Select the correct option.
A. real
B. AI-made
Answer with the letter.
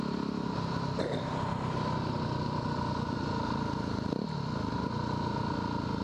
A